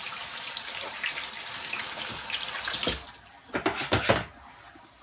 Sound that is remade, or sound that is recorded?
recorded